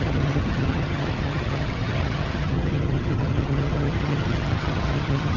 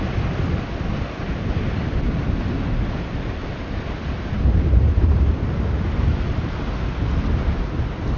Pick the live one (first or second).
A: second